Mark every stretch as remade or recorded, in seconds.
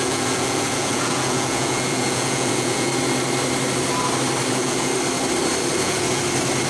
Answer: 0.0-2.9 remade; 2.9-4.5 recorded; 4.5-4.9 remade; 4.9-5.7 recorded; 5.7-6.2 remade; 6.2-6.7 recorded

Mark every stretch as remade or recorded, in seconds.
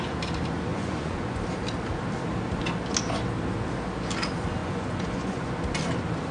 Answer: 0.0-0.7 recorded; 0.7-1.4 remade; 1.4-4.6 recorded; 4.6-5.5 remade; 5.5-6.3 recorded